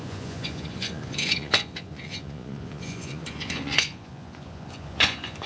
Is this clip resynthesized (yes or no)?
yes